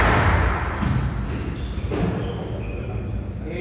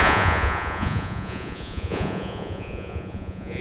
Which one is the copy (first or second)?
second